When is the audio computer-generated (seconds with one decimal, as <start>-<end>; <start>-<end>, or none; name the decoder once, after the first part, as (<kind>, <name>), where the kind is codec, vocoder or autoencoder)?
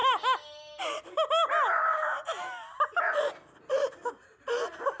none